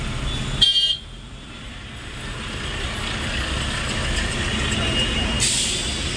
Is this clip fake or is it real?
real